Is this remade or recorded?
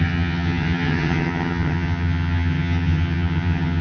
remade